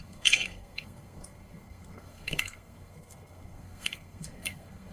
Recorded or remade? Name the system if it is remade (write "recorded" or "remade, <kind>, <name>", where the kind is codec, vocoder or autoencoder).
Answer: remade, codec, SNAC